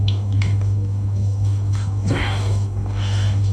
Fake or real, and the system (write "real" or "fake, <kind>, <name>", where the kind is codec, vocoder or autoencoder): fake, codec, DAC